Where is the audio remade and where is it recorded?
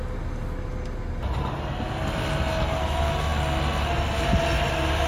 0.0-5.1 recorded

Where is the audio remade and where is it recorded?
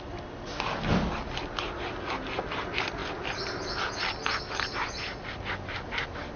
0.0-6.4 recorded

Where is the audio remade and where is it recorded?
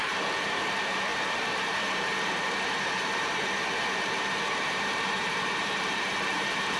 0.0-6.8 remade